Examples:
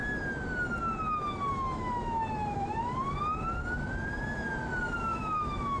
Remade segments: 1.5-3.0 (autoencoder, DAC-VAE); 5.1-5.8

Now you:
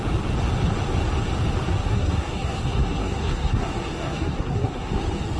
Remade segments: 1.8-5.0 (codec, SNAC)

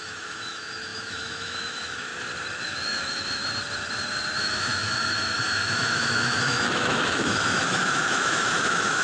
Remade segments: 0.0-2.1 (autoencoder, DAC-VAE); 2.6-3.4; 4.4-9.0